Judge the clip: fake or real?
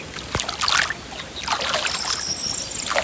real